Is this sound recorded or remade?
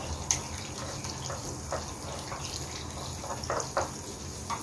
recorded